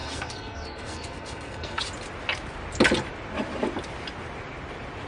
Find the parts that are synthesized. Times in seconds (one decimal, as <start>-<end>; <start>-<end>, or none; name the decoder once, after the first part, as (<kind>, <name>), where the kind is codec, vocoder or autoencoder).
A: 0.0-1.8 (codec, SNAC)